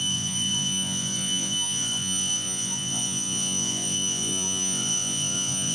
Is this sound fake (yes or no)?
yes